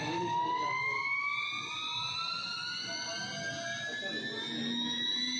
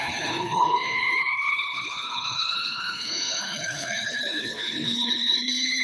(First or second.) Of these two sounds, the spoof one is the second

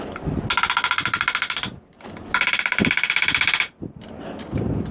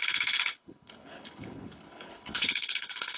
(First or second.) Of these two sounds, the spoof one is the second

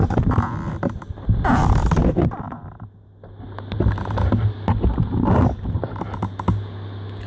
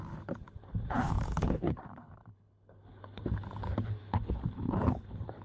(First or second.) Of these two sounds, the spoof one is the second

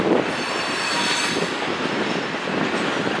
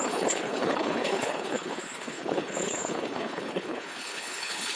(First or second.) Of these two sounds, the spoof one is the second